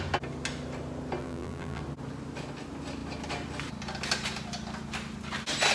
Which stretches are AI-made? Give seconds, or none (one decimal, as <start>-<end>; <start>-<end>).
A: 1.2-1.8